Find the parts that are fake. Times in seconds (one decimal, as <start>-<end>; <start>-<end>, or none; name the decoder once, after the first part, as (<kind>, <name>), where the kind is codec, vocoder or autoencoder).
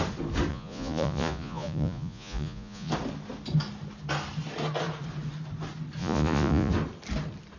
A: 0.5-2.9 (vocoder, Vocos); 6.0-6.7